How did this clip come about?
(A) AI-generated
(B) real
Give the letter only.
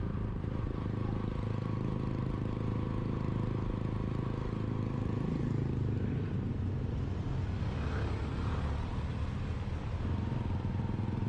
B